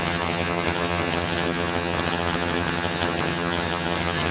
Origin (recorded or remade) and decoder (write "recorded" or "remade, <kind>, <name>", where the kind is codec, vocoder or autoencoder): remade, vocoder, HiFi-GAN